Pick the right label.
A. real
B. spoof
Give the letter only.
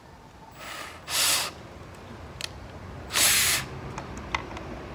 A